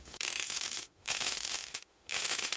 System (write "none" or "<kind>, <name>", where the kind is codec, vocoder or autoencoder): autoencoder, DAC-VAE